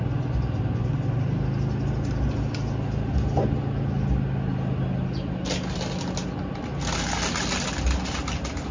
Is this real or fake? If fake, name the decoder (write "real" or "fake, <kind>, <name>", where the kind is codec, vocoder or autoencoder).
real